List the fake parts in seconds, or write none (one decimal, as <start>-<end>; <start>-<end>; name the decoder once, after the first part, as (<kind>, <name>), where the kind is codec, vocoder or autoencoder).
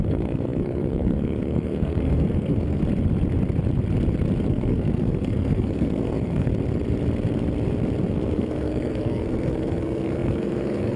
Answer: 0.0-2.8 (codec, SNAC); 4.5-6.5; 8.1-11.0